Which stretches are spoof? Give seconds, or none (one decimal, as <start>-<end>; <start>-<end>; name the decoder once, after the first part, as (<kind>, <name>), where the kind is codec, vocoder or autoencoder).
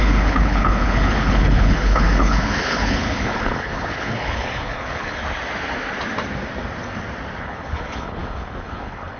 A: 0.0-5.2 (codec, HILCodec); 7.4-9.2